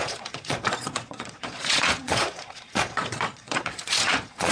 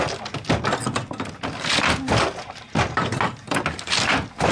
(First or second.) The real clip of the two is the second